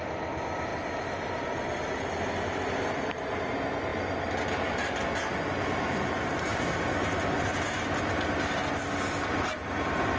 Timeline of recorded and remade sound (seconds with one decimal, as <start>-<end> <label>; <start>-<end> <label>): 0.0-10.2 recorded